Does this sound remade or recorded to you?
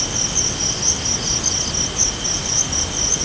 recorded